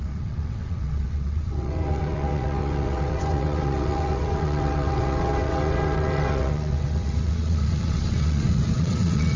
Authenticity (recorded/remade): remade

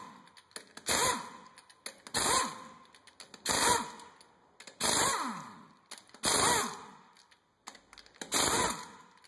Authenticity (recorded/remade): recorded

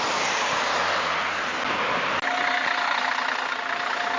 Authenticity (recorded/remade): recorded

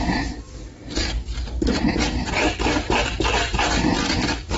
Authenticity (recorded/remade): recorded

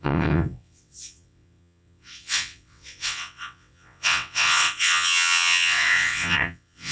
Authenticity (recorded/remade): remade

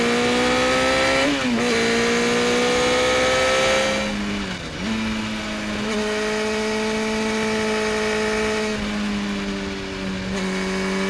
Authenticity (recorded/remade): recorded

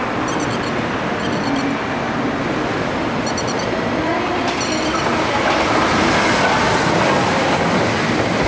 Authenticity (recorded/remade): recorded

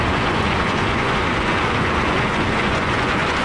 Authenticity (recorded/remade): remade